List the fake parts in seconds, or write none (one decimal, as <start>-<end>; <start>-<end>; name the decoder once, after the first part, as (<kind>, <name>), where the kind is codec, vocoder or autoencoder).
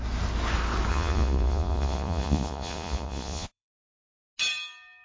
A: 0.9-3.9 (vocoder, Vocos)